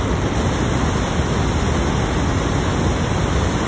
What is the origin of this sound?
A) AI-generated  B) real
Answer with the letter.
B